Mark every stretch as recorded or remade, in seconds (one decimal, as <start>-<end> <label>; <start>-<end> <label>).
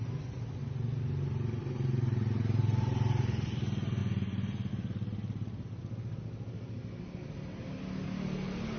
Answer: 0.0-8.8 recorded